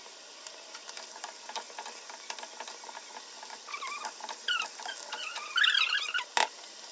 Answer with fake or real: real